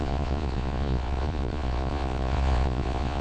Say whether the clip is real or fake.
fake